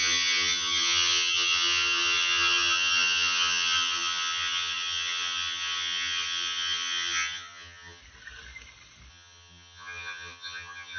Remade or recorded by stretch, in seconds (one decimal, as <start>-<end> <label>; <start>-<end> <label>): 0.0-8.0 remade; 8.0-9.1 recorded; 9.1-11.0 remade

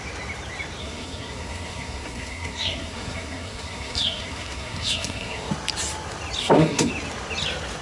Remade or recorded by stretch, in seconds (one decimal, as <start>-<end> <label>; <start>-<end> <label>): 0.0-0.8 recorded; 0.8-5.5 remade; 5.5-6.4 recorded; 6.4-6.9 remade; 6.9-7.8 recorded

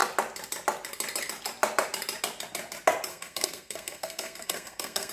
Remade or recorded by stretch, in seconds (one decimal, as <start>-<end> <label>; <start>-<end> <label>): 0.0-3.1 recorded; 3.1-5.1 remade